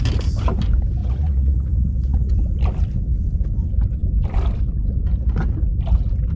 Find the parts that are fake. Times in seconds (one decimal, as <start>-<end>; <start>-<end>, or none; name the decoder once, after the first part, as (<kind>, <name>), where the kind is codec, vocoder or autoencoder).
1.0-2.3 (vocoder, Vocos)